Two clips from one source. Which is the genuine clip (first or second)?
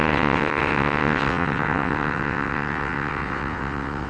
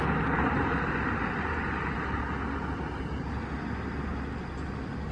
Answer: second